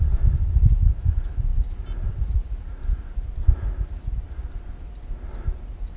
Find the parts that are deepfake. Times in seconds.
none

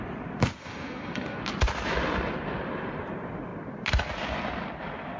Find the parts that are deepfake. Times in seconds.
0.6-1.4

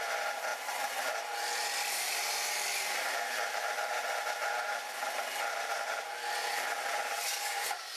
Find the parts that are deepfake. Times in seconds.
none

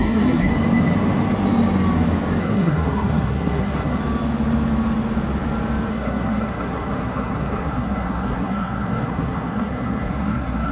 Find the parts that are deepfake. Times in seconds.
0.0-0.5; 2.4-4.0; 5.9-10.7

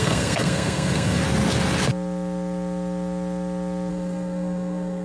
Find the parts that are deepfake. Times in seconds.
0.0-1.2; 3.9-5.0